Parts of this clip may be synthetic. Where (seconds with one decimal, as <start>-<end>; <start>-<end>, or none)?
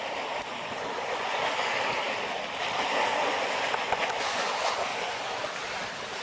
0.5-1.4; 3.1-5.4